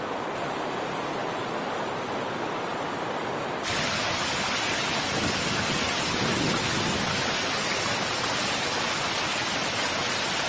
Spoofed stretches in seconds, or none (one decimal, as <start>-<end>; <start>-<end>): none